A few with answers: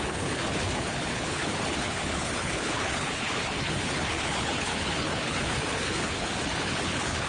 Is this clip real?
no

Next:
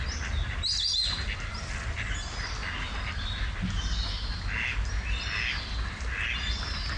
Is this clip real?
yes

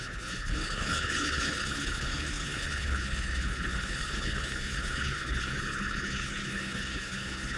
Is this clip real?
no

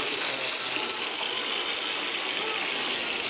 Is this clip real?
yes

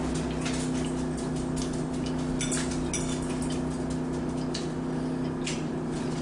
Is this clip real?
yes